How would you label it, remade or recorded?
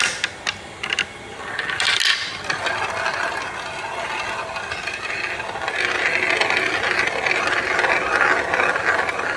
recorded